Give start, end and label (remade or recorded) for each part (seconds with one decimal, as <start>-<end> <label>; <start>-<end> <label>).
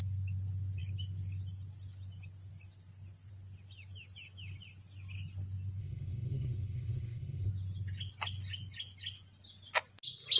0.0-5.8 recorded; 5.8-7.5 remade; 7.5-10.4 recorded